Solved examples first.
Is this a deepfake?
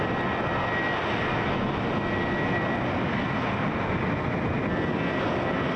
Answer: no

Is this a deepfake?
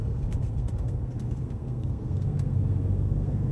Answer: yes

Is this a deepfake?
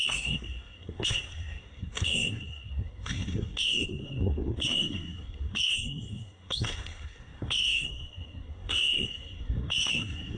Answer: yes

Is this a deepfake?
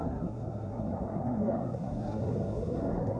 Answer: yes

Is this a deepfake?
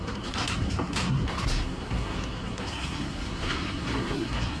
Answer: yes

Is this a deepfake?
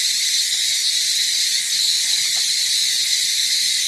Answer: no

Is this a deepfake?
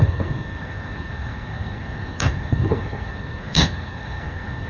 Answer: yes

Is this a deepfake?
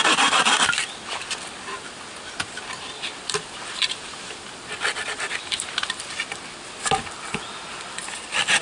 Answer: no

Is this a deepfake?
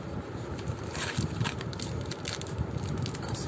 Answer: no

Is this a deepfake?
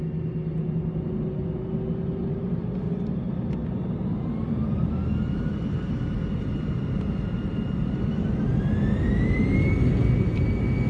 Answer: no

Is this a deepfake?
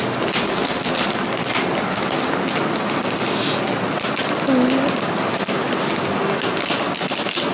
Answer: no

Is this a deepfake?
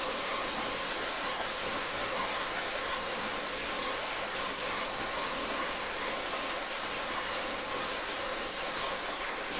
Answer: yes